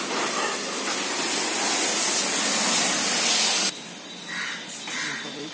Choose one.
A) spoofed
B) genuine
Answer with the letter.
B